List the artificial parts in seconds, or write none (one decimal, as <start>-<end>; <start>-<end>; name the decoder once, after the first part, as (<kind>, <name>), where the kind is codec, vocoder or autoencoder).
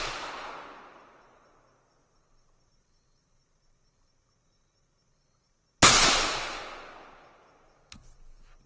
none